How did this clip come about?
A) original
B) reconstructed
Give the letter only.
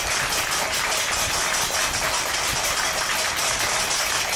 A